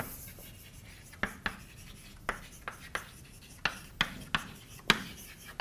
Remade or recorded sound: recorded